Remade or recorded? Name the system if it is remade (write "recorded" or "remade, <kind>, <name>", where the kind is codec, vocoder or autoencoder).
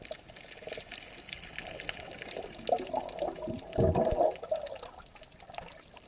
recorded